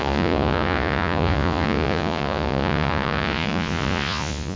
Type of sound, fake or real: fake